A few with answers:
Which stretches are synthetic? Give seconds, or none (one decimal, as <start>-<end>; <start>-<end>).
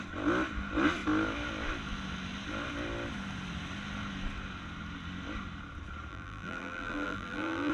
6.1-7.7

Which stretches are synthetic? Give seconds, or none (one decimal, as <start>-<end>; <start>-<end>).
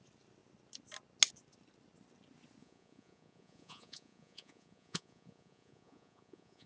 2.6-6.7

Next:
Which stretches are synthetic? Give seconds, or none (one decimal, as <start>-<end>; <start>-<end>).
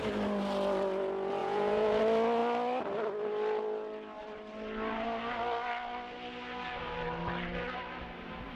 1.4-2.0